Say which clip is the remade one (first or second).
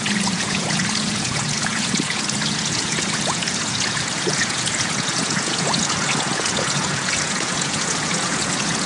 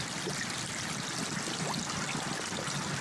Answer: first